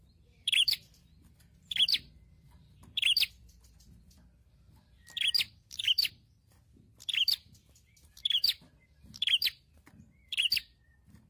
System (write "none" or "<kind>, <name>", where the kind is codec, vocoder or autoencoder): vocoder, BigVGAN v2